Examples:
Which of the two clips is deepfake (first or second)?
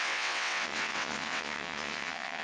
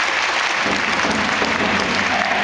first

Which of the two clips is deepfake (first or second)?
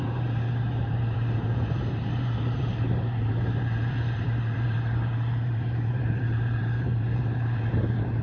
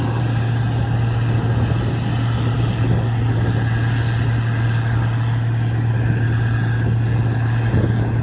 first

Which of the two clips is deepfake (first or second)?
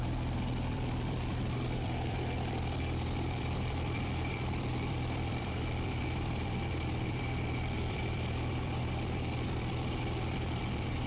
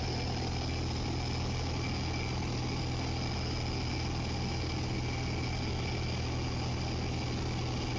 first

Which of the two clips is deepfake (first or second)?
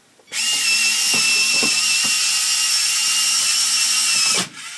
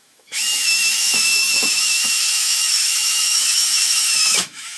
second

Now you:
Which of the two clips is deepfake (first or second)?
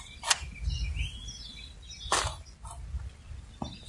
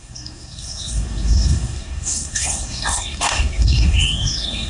second